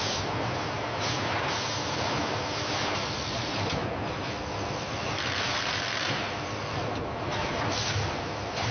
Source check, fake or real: real